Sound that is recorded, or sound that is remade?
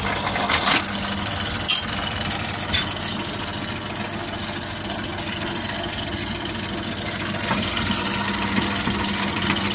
recorded